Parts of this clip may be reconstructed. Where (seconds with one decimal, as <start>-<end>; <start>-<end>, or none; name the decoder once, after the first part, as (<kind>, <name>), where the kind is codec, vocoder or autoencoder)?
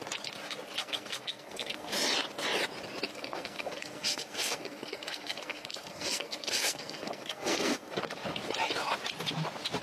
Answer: 0.8-1.9 (codec, SNAC); 3.1-8.0